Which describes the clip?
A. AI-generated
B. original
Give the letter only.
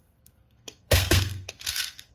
A